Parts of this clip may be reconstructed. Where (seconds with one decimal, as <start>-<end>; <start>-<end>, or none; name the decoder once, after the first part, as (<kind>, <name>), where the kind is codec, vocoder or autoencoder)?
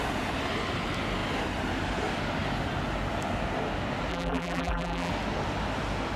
4.1-5.1 (vocoder, BigVGAN v2)